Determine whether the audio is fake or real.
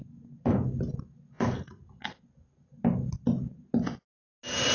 real